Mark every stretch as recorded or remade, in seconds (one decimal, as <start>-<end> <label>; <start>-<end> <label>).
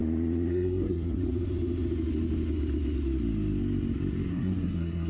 0.0-0.5 recorded; 0.5-1.2 remade; 1.2-4.3 recorded; 4.3-5.1 remade